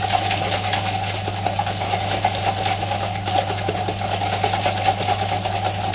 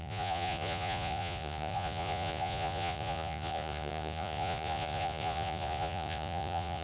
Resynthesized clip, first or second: second